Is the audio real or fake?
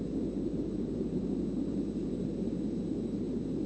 real